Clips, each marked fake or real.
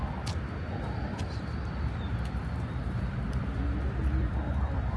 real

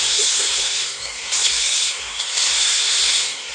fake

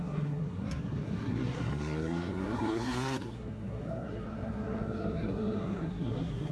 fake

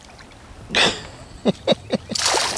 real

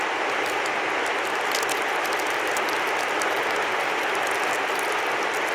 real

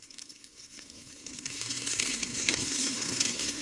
fake